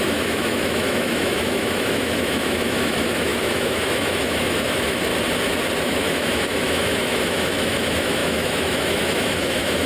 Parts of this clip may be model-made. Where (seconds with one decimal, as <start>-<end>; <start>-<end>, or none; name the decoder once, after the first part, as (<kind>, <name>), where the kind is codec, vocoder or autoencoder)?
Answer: 0.0-5.1 (autoencoder, DAC-VAE); 5.8-9.9